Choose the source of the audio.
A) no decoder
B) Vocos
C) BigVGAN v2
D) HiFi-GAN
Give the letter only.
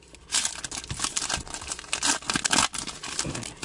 A